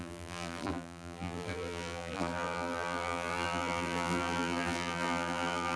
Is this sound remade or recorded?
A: remade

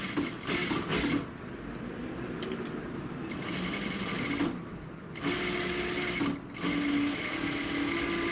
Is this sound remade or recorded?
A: recorded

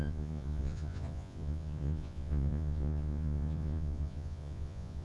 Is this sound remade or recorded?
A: remade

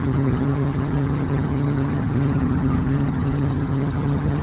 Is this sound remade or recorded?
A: remade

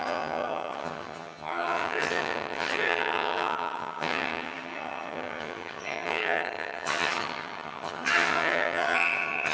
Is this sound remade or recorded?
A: remade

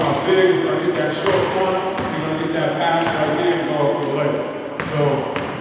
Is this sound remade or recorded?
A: recorded